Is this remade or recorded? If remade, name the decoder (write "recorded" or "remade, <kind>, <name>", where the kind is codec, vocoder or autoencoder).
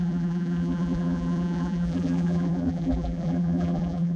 remade, vocoder, BigVGAN v2